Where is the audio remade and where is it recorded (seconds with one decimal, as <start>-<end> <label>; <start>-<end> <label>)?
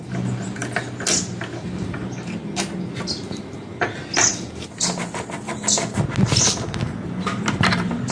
0.0-8.1 recorded